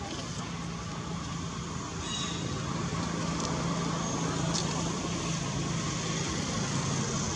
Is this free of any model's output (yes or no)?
yes